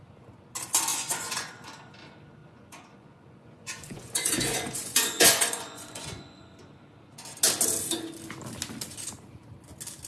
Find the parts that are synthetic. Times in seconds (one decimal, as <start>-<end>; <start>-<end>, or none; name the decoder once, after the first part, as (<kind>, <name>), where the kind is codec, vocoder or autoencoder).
0.9-1.5 (vocoder, Vocos); 2.4-6.5